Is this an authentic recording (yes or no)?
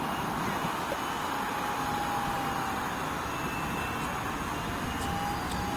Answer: yes